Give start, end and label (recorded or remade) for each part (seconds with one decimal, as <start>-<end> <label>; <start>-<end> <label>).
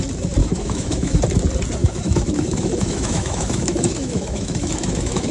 0.0-0.4 recorded; 0.4-1.2 remade; 1.2-1.8 recorded; 1.8-5.3 remade